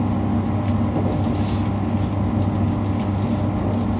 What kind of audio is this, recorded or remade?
recorded